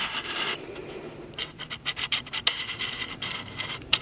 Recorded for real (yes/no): no